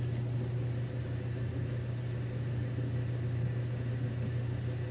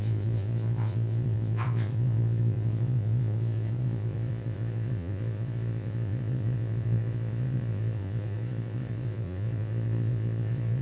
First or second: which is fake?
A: second